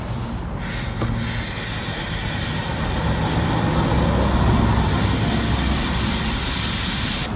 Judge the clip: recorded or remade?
recorded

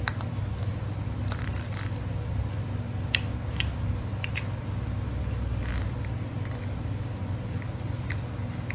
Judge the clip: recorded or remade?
recorded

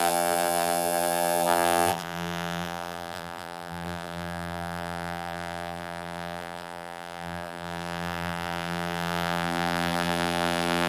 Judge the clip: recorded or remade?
remade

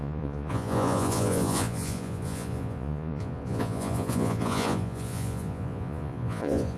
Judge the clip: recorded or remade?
remade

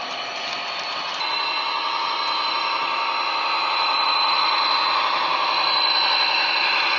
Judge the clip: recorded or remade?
recorded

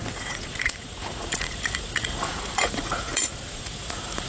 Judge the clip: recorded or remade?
remade